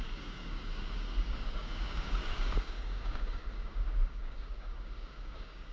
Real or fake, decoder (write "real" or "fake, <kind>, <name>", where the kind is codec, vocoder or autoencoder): fake, codec, DAC